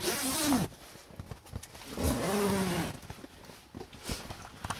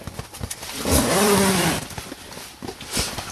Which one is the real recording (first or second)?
first